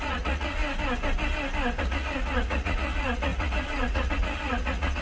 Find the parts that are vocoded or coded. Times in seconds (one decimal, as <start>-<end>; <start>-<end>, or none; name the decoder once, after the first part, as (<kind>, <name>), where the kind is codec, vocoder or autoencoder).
0.0-0.6 (vocoder, Vocos); 1.8-5.0